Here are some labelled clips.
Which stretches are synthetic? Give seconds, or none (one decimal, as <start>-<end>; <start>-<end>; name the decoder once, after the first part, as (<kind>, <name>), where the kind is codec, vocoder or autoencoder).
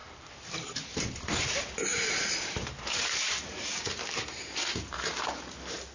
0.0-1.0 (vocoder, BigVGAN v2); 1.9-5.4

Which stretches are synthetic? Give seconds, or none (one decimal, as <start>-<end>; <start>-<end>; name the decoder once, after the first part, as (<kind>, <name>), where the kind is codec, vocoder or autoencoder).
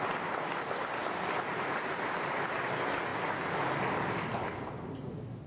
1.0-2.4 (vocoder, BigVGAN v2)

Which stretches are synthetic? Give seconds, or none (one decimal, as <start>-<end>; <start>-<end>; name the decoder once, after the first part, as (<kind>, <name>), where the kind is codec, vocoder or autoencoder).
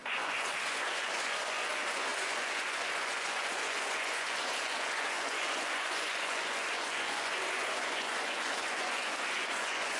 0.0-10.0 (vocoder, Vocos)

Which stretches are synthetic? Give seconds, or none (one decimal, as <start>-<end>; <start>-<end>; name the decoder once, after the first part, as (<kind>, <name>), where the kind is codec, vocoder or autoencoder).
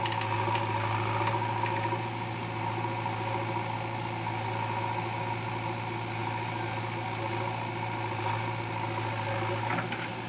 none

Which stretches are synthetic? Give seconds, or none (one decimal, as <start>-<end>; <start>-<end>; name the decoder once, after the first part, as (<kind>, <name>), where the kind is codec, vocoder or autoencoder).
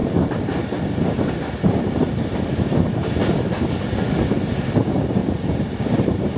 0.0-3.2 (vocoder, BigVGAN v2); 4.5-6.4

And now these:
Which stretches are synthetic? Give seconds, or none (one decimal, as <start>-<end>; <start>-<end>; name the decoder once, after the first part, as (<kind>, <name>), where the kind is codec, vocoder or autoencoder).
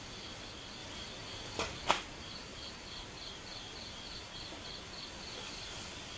0.8-1.9 (vocoder, BigVGAN v2); 2.5-4.9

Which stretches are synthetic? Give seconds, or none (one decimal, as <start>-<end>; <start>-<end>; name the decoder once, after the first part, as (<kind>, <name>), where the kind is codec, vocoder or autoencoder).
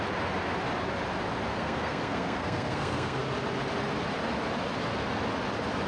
1.5-3.2 (codec, SNAC)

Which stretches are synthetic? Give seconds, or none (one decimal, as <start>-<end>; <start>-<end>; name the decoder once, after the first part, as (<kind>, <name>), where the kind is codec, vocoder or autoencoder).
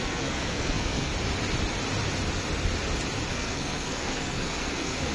0.0-1.1 (codec, SNAC); 3.3-5.1